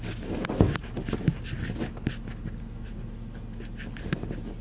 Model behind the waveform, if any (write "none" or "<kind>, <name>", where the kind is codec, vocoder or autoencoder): none